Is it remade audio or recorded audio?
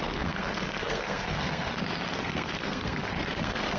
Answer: remade